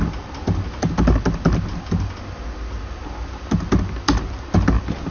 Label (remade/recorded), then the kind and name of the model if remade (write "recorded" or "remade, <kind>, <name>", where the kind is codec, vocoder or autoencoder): recorded